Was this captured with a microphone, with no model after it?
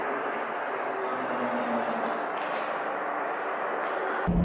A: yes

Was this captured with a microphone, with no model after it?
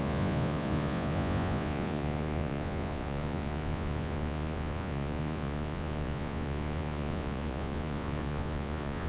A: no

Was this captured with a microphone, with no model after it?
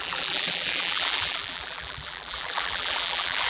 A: no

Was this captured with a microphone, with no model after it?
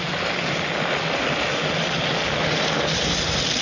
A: yes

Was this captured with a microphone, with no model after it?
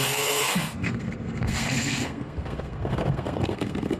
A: no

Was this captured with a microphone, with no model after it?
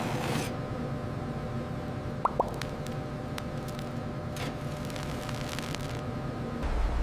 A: yes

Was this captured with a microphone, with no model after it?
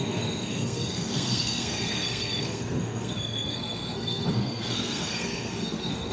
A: no